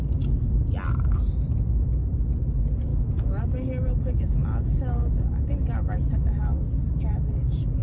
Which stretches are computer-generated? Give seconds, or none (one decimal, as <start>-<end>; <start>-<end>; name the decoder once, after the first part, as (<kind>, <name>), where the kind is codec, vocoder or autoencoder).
none